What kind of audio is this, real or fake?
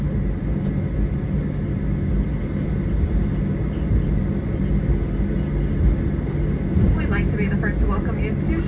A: real